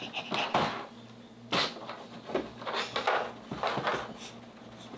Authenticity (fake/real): real